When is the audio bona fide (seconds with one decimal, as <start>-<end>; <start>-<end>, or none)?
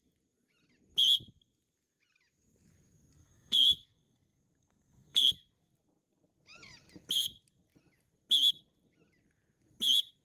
0.0-3.2; 5.3-10.2